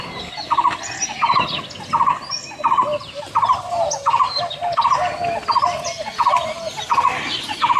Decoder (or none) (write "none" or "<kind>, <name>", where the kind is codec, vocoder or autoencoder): none